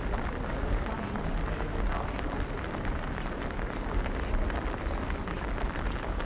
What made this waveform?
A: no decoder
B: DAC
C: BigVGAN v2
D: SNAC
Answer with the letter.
A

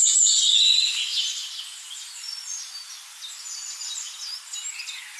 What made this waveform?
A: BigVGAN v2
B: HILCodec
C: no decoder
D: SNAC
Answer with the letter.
C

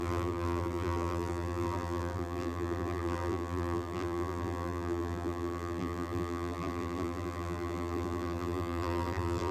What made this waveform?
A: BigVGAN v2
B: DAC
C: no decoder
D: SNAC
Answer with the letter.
A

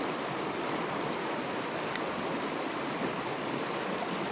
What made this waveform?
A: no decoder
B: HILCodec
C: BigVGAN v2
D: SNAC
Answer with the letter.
C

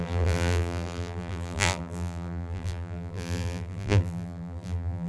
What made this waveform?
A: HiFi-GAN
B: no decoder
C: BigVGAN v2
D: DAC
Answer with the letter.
C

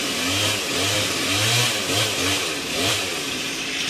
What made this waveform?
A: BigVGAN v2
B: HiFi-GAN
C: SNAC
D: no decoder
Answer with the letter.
A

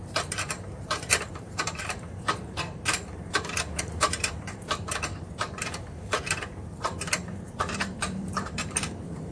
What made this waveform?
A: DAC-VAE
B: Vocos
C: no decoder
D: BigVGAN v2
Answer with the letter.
D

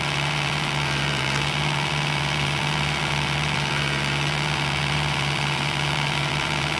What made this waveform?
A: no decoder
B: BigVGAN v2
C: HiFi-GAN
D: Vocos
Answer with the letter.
B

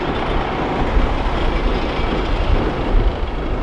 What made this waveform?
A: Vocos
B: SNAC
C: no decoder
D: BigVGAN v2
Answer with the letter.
C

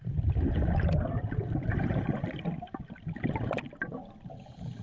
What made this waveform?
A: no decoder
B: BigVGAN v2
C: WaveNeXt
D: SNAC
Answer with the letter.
A